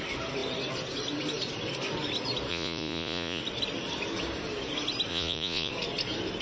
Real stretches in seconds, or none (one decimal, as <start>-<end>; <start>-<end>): 0.0-2.5; 3.4-5.1; 5.7-6.4